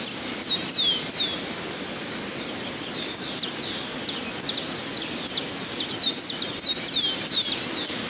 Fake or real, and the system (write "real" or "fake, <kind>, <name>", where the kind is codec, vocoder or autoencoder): real